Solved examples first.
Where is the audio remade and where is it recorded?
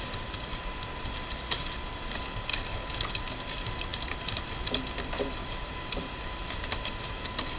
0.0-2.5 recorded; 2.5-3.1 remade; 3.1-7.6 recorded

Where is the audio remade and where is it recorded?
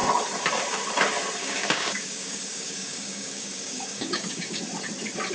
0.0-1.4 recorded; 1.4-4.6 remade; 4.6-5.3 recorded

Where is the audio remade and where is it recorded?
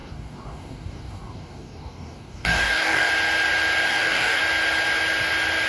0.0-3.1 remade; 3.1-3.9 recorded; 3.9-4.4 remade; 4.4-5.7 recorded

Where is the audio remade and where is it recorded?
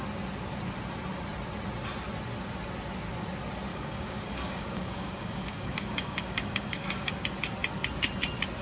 0.0-3.7 recorded; 3.7-7.1 remade; 7.1-8.6 recorded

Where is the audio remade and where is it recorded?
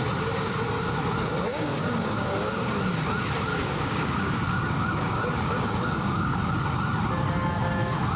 0.0-1.5 recorded; 1.5-2.7 remade; 2.7-3.5 recorded; 3.5-6.6 remade; 6.6-8.2 recorded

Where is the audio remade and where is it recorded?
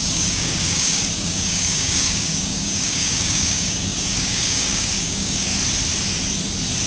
0.0-5.5 remade; 5.5-6.9 recorded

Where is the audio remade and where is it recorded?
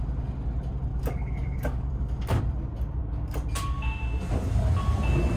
0.0-0.9 recorded; 0.9-2.4 remade; 2.4-5.4 recorded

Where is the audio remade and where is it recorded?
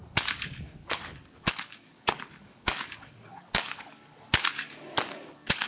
0.0-5.7 remade